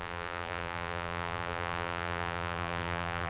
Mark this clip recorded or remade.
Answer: remade